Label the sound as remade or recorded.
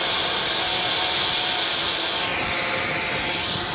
recorded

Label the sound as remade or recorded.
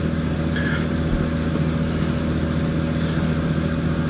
recorded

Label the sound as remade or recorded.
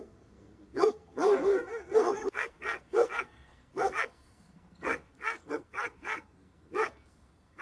remade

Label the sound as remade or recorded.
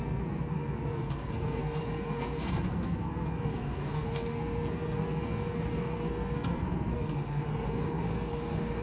remade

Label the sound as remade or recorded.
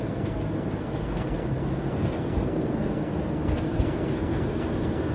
remade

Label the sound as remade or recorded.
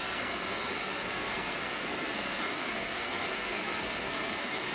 remade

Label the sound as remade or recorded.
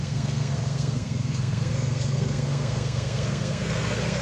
remade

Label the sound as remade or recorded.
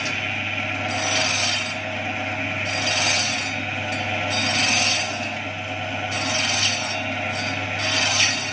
recorded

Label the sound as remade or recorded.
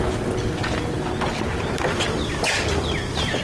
recorded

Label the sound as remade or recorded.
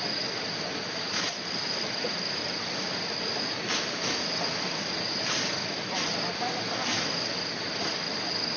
recorded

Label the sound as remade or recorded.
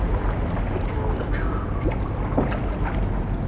recorded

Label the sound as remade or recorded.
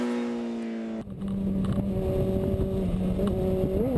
recorded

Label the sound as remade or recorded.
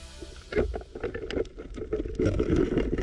recorded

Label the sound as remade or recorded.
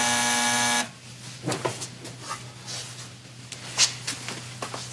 recorded